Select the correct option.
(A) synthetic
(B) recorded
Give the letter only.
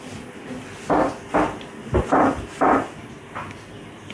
B